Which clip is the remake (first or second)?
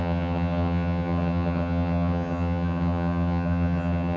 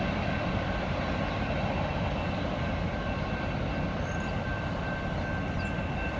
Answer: first